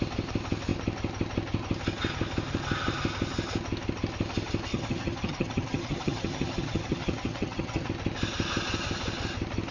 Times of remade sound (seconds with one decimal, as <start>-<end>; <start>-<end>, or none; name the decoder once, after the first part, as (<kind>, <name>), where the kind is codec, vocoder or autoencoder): 4.7-7.9 (vocoder, HiFi-GAN)